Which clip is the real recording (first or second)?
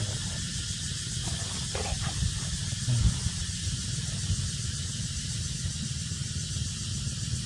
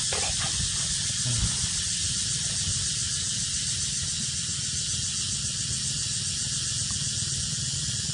second